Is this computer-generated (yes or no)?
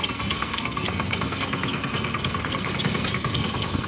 yes